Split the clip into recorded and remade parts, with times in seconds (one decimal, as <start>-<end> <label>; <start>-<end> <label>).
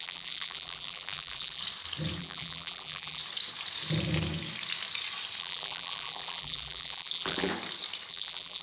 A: 0.0-1.6 remade; 1.6-2.2 recorded; 2.2-3.2 remade; 3.2-5.4 recorded; 5.4-7.5 remade; 7.5-8.1 recorded; 8.1-8.6 remade